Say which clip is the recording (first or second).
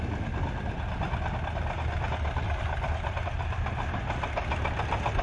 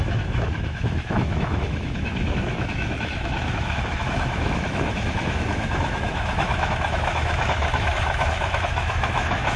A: first